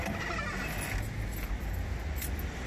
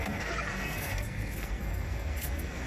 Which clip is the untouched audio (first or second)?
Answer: first